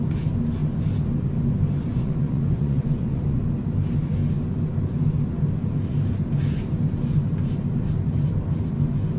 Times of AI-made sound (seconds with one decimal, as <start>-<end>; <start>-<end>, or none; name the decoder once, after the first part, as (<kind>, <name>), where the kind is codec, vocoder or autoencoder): 1.9-3.4 (vocoder, Vocos)